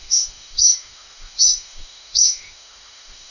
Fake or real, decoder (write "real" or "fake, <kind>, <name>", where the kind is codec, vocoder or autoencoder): fake, autoencoder, DAC-VAE